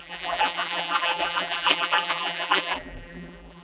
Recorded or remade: remade